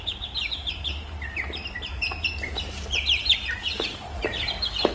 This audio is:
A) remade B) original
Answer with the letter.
A